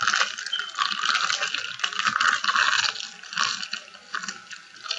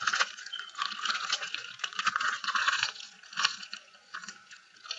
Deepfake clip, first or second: second